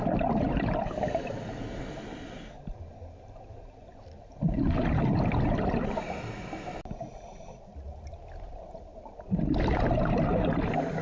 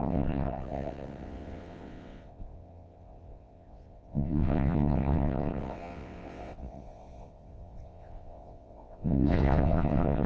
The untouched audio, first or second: first